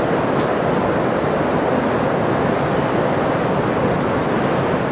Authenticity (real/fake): real